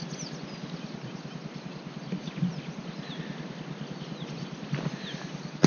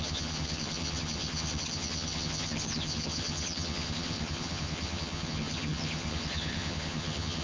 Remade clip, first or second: second